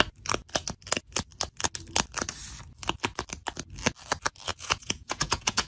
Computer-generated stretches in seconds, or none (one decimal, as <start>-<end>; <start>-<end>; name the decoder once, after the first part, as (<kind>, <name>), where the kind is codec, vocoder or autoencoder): 4.5-5.7 (vocoder, Vocos)